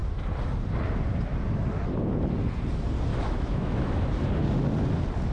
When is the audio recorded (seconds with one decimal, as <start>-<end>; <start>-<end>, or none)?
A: 0.0-3.1; 4.0-5.3